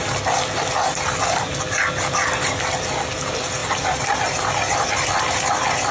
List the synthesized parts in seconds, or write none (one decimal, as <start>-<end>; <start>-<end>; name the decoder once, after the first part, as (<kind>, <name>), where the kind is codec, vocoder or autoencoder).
none